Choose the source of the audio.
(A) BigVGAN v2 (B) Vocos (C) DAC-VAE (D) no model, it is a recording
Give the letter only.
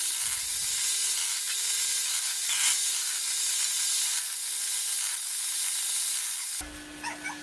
D